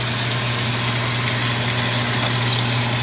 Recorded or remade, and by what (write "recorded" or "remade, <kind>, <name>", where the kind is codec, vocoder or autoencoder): recorded